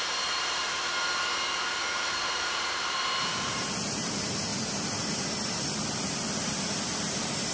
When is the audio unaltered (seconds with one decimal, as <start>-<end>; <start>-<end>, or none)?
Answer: 4.5-5.1